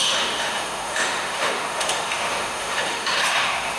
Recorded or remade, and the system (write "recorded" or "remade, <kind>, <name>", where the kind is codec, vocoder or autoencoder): remade, autoencoder, DAC-VAE